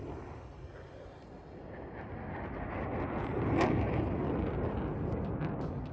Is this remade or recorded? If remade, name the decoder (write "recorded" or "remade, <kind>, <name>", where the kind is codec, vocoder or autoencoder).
recorded